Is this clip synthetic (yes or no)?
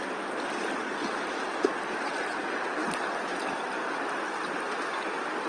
no